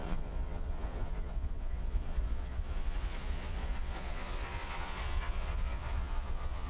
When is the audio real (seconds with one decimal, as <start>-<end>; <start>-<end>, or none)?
none